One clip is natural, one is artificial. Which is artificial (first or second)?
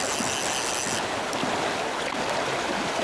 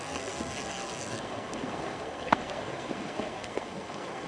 second